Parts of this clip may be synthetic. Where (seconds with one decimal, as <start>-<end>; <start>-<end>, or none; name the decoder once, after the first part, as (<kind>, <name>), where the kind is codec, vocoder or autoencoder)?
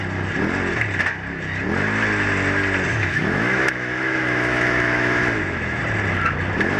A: 2.9-5.8 (autoencoder, DAC-VAE)